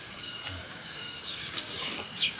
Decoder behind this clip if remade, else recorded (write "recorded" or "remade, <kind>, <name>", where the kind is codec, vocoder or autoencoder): remade, codec, DAC